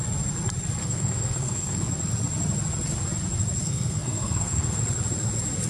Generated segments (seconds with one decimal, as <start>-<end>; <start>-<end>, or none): 0.8-1.9; 3.6-4.8